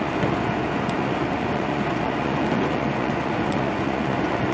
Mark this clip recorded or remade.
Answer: remade